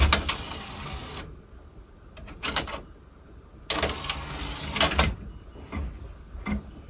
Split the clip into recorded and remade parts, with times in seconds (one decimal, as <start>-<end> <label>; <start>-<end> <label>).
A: 0.0-6.9 recorded